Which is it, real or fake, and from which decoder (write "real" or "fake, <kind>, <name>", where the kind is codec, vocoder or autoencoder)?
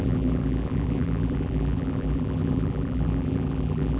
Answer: fake, vocoder, BigVGAN v2